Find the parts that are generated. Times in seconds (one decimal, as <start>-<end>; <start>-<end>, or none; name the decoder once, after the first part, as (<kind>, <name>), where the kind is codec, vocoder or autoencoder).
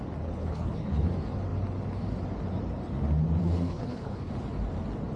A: 0.4-1.0 (codec, HILCodec); 3.4-4.3